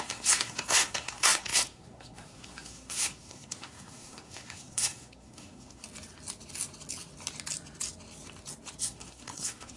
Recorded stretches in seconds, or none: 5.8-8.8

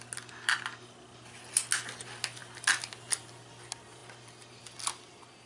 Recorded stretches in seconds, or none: 0.0-5.5

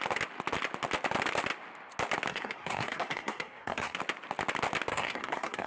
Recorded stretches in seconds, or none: 0.0-2.3; 4.0-4.9